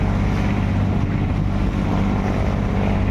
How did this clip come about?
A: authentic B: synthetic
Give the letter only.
A